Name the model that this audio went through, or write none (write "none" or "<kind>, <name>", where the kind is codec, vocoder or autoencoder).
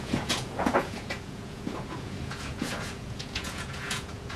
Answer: vocoder, Vocos